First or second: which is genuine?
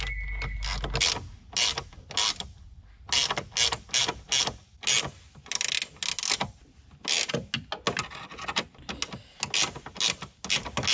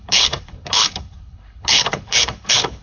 first